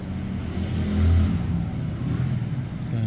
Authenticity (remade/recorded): recorded